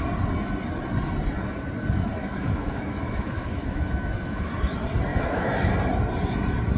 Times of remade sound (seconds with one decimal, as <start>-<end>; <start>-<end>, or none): 2.2-4.5; 5.1-5.7